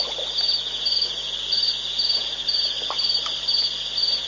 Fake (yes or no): no